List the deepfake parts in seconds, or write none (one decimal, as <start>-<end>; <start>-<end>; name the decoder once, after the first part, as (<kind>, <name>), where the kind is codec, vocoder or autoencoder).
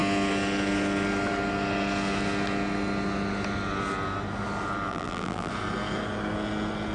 4.9-5.5 (vocoder, BigVGAN v2)